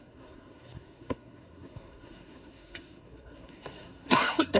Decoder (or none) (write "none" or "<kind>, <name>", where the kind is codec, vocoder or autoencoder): codec, SNAC